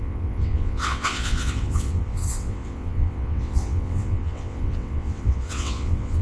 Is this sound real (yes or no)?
no